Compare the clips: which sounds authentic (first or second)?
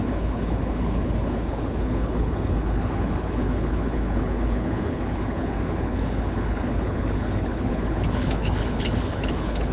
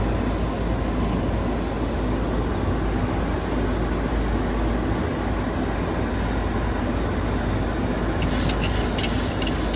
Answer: second